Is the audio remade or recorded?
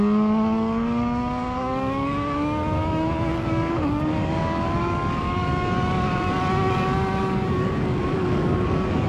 remade